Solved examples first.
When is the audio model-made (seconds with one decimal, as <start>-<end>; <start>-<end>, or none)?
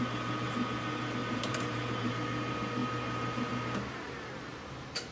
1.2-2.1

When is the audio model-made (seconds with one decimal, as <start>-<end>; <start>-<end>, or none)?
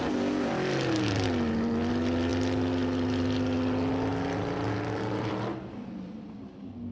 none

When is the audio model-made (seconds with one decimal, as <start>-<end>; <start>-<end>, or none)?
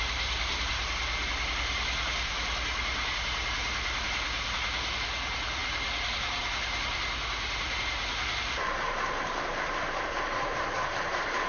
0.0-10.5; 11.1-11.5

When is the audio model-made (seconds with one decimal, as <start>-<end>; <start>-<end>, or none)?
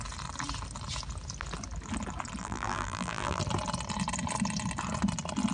2.4-3.4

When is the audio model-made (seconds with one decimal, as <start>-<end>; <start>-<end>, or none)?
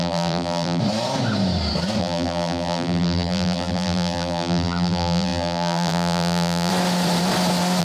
0.0-0.8; 2.0-6.7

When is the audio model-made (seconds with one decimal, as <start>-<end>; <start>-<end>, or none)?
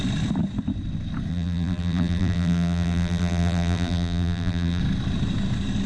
1.3-4.8